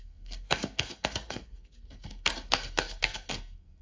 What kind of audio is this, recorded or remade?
remade